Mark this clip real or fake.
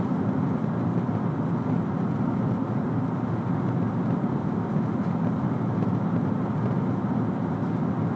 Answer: real